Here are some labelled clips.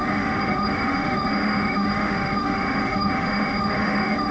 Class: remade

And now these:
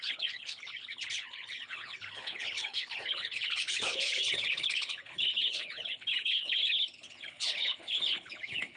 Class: remade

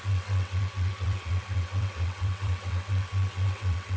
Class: remade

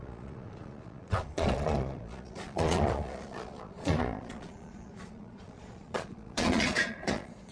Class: remade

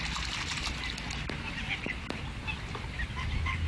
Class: recorded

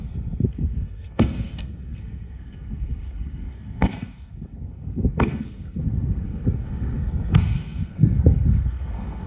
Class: remade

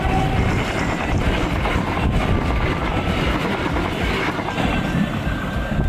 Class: recorded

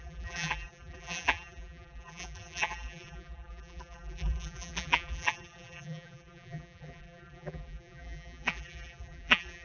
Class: remade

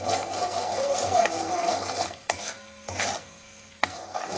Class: remade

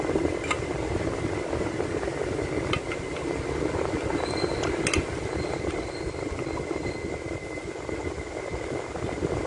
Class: recorded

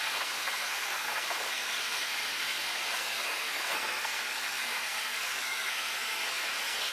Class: remade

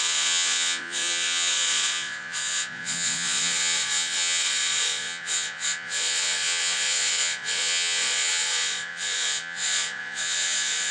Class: remade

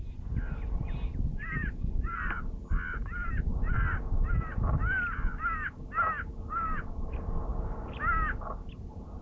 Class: recorded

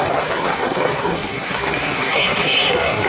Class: remade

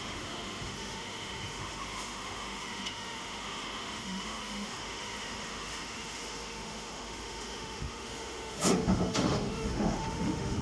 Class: remade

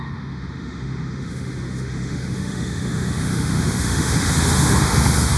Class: remade